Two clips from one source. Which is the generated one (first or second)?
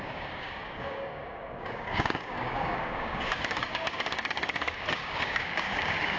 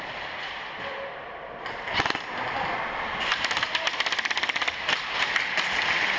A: first